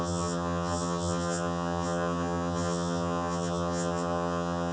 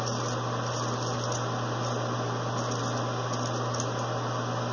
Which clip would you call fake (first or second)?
first